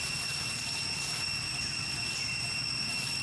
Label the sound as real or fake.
real